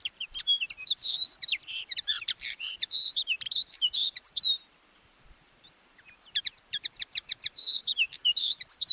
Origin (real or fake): fake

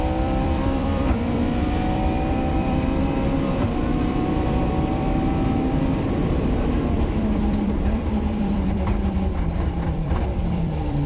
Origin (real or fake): fake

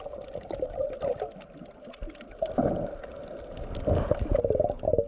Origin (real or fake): real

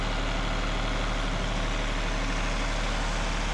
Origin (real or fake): real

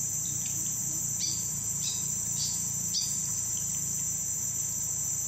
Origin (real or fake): fake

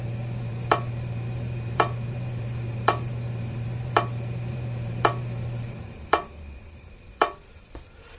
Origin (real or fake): fake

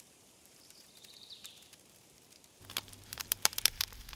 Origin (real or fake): fake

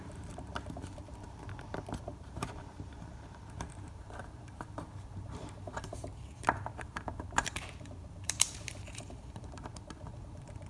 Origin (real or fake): fake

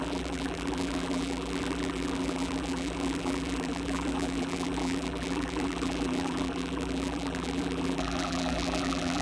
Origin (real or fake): fake